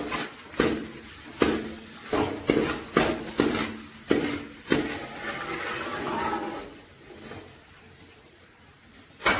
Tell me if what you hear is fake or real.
real